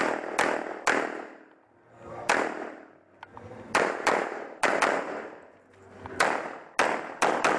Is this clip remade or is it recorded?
recorded